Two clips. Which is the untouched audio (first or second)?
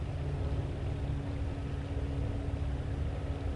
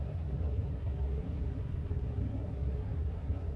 first